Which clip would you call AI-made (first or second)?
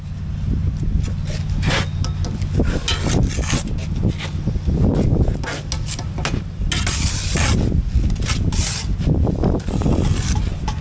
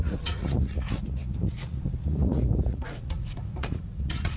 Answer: second